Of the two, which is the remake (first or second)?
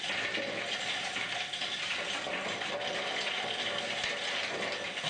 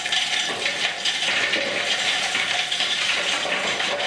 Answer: second